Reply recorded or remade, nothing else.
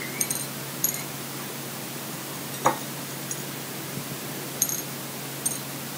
remade